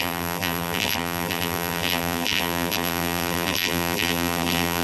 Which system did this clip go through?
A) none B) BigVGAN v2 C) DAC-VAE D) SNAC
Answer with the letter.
B